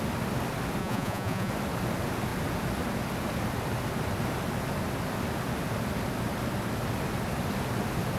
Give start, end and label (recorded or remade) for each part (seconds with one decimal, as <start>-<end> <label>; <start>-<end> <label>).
0.0-0.8 recorded; 0.8-1.5 remade; 1.5-8.2 recorded